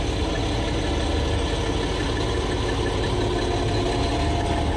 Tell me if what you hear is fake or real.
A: real